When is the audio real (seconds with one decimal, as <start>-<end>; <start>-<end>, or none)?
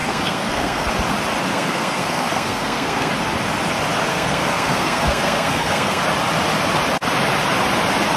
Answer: 0.9-1.5; 3.1-4.1; 6.0-8.2